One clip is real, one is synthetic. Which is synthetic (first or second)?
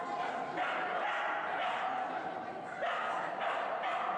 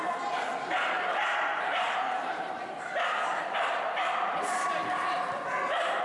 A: second